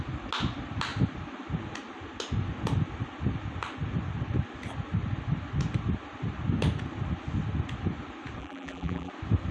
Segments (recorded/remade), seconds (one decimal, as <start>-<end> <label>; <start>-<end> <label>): 0.0-8.4 recorded; 8.4-9.1 remade; 9.1-9.5 recorded